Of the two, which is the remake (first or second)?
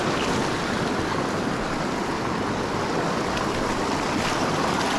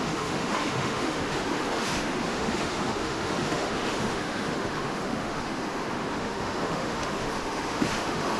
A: second